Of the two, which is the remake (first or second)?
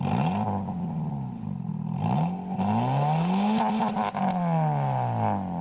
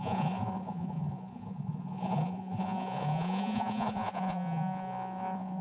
second